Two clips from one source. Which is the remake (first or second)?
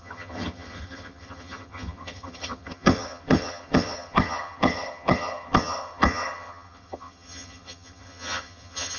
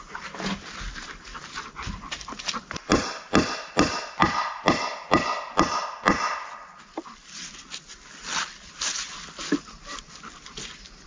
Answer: first